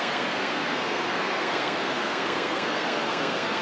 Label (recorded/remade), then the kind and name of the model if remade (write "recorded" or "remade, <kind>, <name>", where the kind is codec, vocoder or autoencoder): remade, codec, SNAC